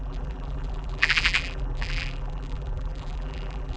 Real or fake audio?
fake